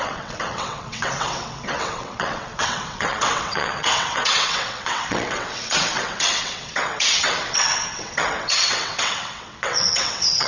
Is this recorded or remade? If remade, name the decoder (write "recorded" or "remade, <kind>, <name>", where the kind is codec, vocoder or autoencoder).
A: remade, vocoder, WaveNeXt